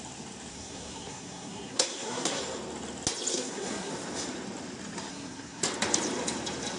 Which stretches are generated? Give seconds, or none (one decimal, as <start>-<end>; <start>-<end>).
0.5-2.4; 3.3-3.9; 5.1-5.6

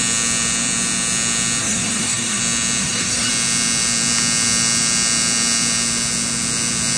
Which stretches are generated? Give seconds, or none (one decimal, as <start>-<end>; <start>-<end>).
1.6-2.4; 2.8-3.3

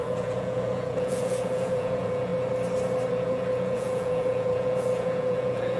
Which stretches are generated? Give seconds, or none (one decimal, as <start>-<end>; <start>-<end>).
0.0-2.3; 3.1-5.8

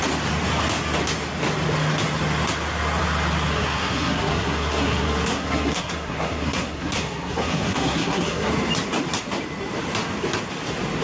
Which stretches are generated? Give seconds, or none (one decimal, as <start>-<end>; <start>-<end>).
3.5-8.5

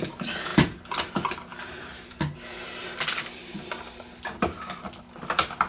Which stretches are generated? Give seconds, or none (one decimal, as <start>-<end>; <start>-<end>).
1.5-3.7

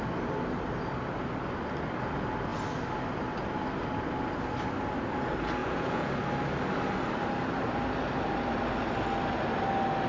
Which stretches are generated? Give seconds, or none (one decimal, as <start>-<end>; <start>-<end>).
5.6-6.1

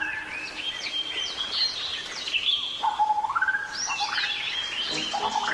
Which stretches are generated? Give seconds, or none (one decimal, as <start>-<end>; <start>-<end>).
none

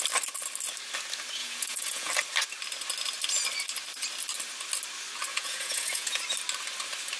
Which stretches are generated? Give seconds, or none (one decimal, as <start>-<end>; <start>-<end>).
1.4-2.1; 5.3-6.2